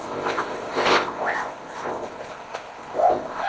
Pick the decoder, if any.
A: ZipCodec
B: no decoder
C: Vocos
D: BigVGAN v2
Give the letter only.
A